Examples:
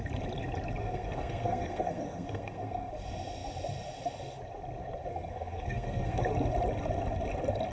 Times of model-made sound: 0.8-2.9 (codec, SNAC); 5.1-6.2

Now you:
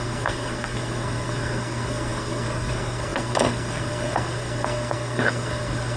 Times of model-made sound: 0.0-6.0 (codec, SNAC)

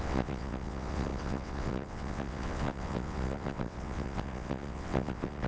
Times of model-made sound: 0.0-5.5 (vocoder, WaveNeXt)